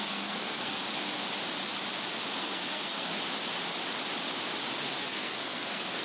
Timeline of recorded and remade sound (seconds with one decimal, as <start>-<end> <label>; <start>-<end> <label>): 0.0-0.8 remade; 0.8-2.4 recorded; 2.4-3.1 remade; 3.1-5.0 recorded; 5.0-6.0 remade